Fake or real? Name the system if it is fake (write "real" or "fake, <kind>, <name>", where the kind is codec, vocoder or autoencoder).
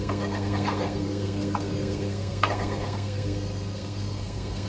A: fake, codec, SNAC